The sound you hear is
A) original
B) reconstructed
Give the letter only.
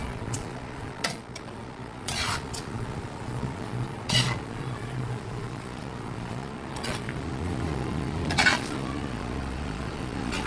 B